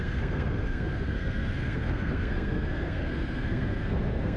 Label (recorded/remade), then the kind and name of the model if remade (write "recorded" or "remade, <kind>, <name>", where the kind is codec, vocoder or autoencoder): remade, codec, SNAC